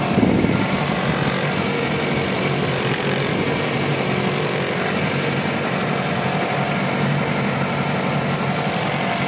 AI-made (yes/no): no